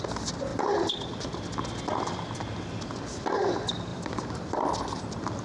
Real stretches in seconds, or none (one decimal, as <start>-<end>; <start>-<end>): 0.0-0.5; 1.5-3.9; 4.7-5.4